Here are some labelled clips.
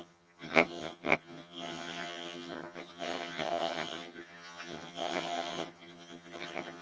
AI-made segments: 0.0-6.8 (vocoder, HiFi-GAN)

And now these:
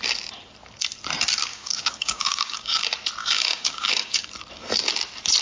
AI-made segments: 1.5-2.8 (codec, DAC); 3.2-4.3